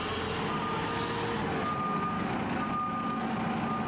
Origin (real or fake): real